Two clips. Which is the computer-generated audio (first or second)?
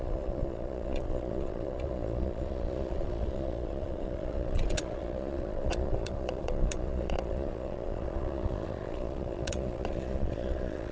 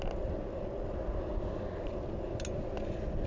first